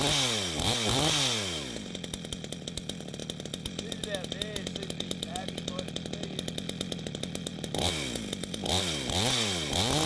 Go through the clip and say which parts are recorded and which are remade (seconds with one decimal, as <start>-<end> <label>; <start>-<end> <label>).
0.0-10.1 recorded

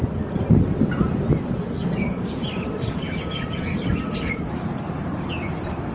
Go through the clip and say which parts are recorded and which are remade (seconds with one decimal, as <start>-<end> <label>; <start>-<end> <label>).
0.0-1.8 recorded; 1.8-5.3 remade; 5.3-5.9 recorded

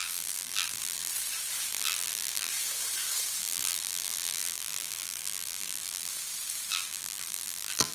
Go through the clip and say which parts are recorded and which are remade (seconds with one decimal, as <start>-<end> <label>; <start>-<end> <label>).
0.0-1.1 remade; 1.1-1.7 recorded; 1.7-2.5 remade; 2.5-3.4 recorded; 3.4-6.1 remade; 6.1-6.7 recorded; 6.7-7.9 remade

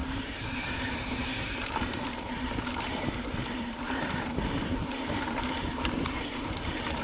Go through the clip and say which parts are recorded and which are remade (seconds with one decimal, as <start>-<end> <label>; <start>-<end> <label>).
0.0-7.0 remade

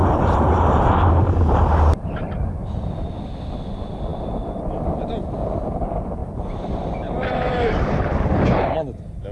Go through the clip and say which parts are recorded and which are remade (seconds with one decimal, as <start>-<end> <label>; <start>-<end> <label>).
0.0-0.9 remade; 0.9-2.6 recorded; 2.6-3.2 remade; 3.2-6.2 recorded; 6.2-8.1 remade; 8.1-9.3 recorded

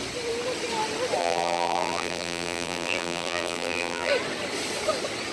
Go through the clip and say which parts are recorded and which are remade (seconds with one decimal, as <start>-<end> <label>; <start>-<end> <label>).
0.0-1.2 recorded; 1.2-4.1 remade; 4.1-5.3 recorded

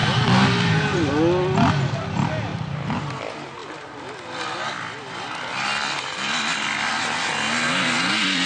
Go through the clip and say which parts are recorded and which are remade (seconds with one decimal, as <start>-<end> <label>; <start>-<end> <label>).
0.0-1.1 remade; 1.1-2.5 recorded; 2.5-3.2 remade; 3.2-8.5 recorded

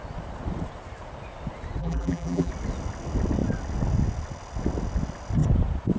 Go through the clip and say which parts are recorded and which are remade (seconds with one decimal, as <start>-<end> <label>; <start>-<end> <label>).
0.0-1.8 recorded; 1.8-2.5 remade; 2.5-6.0 recorded